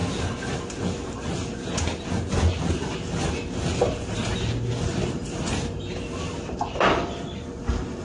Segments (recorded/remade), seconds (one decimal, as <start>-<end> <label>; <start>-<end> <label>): 0.0-2.7 remade; 2.7-5.9 recorded; 5.9-7.6 remade; 7.6-8.0 recorded